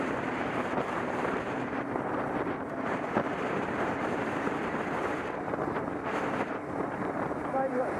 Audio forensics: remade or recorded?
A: remade